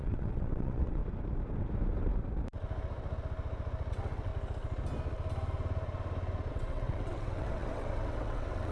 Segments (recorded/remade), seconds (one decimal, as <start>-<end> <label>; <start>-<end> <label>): 0.0-1.0 remade; 1.0-3.9 recorded; 3.9-4.3 remade; 4.3-6.5 recorded; 6.5-8.7 remade